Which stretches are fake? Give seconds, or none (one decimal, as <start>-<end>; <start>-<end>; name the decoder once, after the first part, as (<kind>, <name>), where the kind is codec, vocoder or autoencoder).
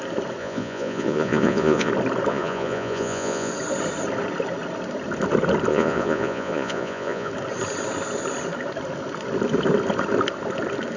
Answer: 0.4-1.9 (vocoder, Vocos); 2.3-3.5; 5.7-7.3